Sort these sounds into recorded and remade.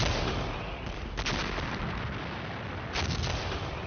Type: recorded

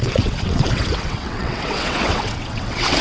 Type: remade